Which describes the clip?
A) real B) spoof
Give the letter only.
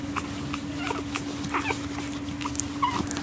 A